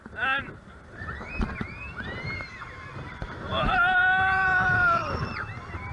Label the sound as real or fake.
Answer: fake